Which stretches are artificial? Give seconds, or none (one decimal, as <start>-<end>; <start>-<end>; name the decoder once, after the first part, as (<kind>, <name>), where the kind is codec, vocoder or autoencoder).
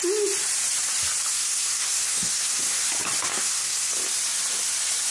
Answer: 1.3-2.8 (codec, SNAC); 3.3-3.9